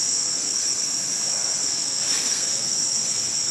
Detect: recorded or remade remade